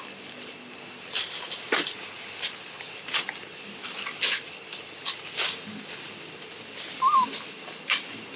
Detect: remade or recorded recorded